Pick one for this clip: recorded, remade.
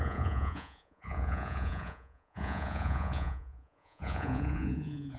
remade